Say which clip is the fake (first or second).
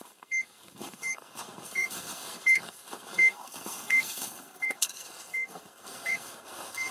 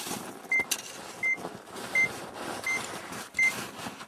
first